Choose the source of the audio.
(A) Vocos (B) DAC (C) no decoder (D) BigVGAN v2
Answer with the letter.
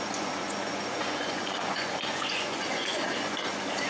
A